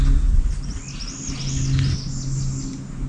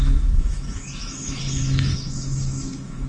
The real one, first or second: first